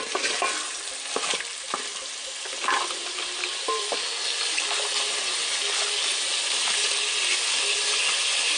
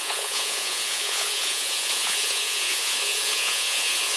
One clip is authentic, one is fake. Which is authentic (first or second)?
first